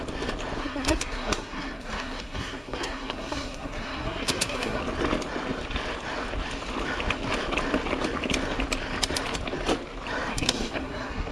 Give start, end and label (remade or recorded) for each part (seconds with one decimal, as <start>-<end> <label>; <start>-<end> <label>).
0.0-0.6 recorded; 0.6-4.8 remade; 4.8-10.3 recorded; 10.3-11.3 remade